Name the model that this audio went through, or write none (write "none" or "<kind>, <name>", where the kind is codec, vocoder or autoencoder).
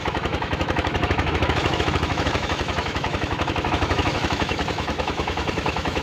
autoencoder, DAC-VAE